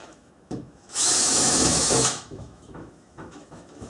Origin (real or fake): fake